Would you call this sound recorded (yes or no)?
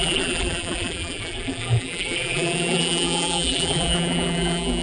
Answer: no